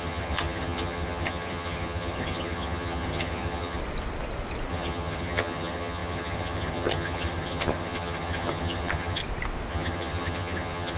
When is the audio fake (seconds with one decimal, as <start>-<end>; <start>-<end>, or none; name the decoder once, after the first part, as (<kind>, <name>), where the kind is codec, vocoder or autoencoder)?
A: 0.0-3.8 (vocoder, HiFi-GAN); 4.7-9.2; 9.7-11.0